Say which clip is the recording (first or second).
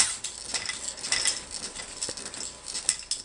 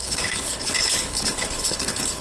first